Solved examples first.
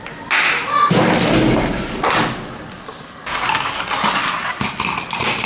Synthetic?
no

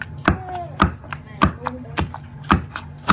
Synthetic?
no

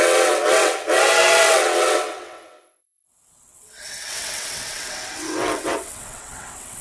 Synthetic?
yes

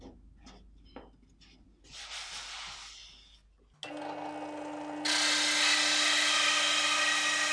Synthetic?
no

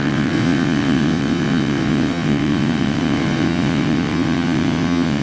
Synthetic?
yes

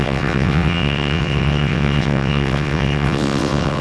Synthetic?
yes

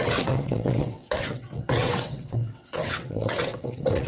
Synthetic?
yes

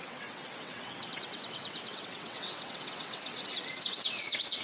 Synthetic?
yes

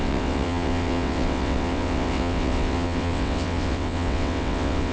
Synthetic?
yes